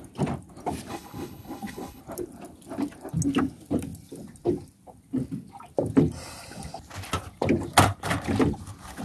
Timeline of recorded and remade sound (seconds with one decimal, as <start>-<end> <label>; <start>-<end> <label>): 0.0-0.9 recorded; 0.9-2.0 remade; 2.0-9.0 recorded